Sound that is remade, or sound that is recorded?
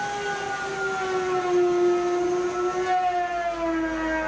recorded